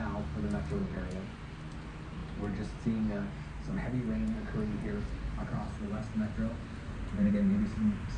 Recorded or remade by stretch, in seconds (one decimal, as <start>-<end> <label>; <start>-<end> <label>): 0.0-0.8 recorded; 0.8-1.4 remade; 1.4-8.2 recorded